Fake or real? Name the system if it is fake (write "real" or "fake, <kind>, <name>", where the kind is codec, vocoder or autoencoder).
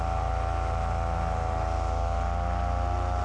real